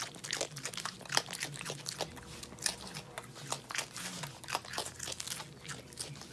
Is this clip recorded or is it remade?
recorded